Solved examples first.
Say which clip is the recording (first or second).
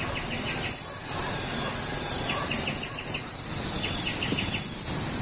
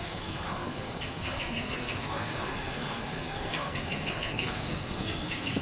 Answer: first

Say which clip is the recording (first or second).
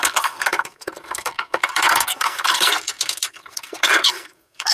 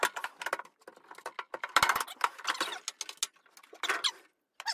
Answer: second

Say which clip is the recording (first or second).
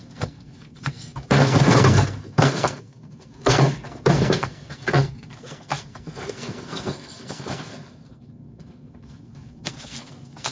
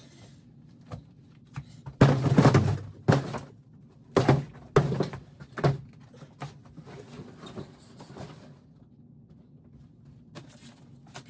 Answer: second